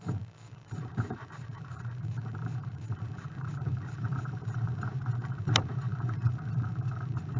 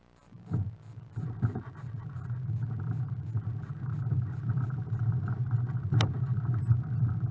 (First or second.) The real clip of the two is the second